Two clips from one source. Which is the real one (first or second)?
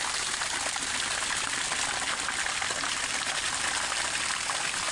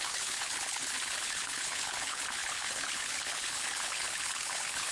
first